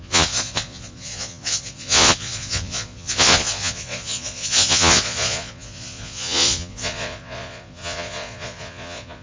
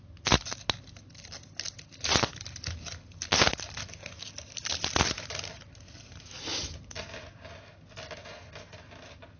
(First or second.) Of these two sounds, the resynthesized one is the first